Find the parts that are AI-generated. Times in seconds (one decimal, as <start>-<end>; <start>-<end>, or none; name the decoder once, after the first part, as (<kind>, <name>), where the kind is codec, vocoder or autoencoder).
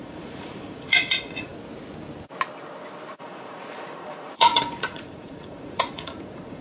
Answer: 0.0-1.5 (vocoder, Vocos); 3.1-6.6